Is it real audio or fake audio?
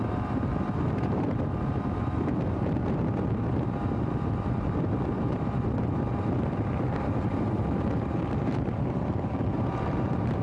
fake